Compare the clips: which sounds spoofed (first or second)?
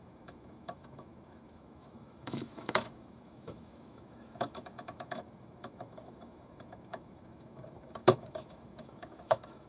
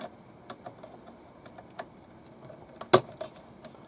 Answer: first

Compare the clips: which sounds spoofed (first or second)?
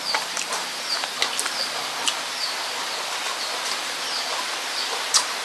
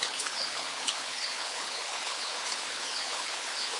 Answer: second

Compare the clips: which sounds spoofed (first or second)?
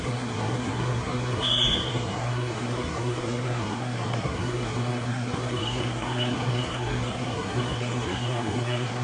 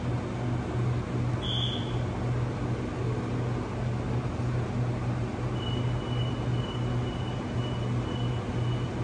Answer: first